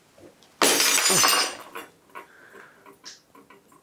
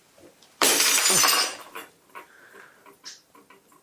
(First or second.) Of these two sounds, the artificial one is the second